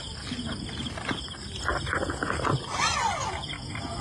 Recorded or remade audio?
recorded